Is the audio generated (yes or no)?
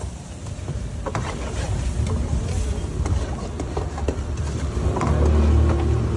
no